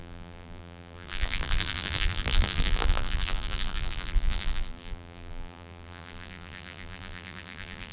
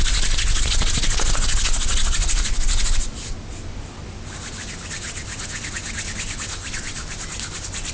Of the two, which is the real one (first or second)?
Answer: second